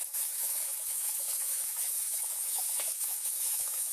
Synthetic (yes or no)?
yes